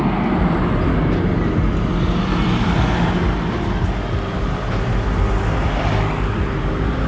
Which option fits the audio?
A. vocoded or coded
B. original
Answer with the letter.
B